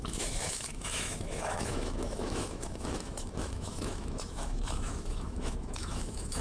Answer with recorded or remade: remade